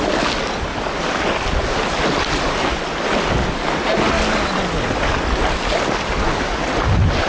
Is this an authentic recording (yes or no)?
yes